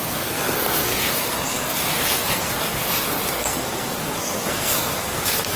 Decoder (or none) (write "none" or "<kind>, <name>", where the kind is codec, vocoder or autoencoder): codec, SNAC